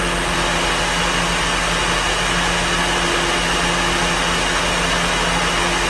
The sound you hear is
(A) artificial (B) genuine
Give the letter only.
B